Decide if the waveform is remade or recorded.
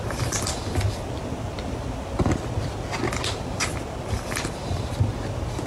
recorded